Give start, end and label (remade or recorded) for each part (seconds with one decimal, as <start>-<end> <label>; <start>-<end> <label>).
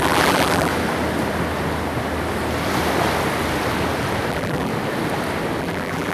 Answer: 0.0-0.7 remade; 0.7-4.3 recorded; 4.3-4.7 remade; 4.7-5.6 recorded; 5.6-6.1 remade